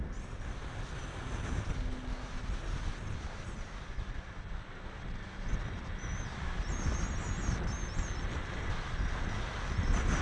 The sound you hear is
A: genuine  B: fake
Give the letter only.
A